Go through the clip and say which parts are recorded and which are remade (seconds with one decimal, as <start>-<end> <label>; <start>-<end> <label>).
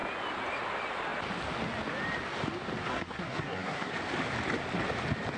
0.0-2.9 recorded; 2.9-3.9 remade; 3.9-5.4 recorded